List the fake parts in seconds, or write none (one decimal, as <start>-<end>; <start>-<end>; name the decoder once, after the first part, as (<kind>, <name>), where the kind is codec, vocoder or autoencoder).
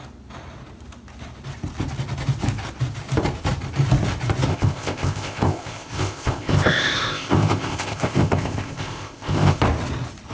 4.5-9.6 (codec, ZipCodec)